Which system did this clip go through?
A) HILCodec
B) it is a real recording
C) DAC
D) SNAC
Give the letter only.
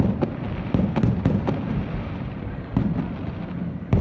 B